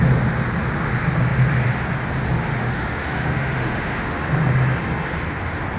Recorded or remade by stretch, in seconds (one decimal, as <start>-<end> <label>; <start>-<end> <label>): 0.0-2.5 recorded; 2.5-4.2 remade; 4.2-5.8 recorded

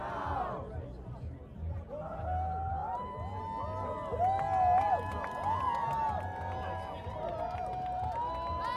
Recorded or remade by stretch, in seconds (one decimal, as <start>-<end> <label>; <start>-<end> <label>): 0.0-8.8 recorded

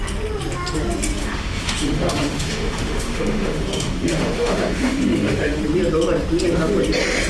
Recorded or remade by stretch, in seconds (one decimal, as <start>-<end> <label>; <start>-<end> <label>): 0.0-1.2 recorded; 1.2-5.6 remade; 5.6-7.3 recorded

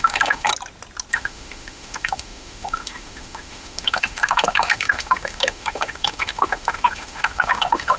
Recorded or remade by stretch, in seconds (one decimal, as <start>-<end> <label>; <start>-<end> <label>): 0.0-0.5 remade; 0.5-1.1 recorded; 1.1-8.0 remade

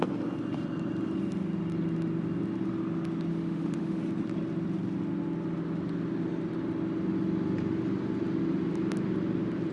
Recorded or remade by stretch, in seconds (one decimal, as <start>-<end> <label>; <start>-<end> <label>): 0.0-3.3 recorded; 3.3-4.0 remade; 4.0-9.7 recorded

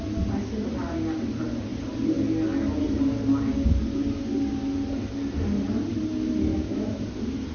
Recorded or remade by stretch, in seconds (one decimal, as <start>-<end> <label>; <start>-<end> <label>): 0.0-6.5 recorded; 6.5-7.0 remade; 7.0-7.5 recorded

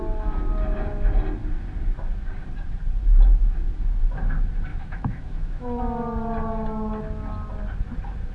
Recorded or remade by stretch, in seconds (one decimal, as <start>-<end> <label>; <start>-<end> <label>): 0.0-4.7 recorded; 4.7-5.8 remade; 5.8-8.3 recorded